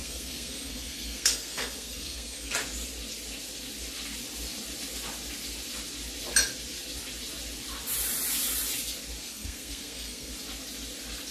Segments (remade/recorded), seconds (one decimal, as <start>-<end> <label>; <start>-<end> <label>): 0.0-2.5 remade; 2.5-9.2 recorded; 9.2-10.3 remade; 10.3-11.3 recorded